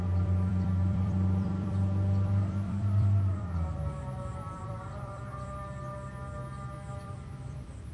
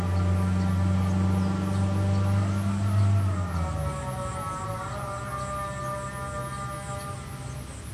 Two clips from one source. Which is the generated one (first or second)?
first